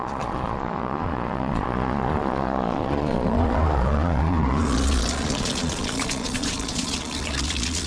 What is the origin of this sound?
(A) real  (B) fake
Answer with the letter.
B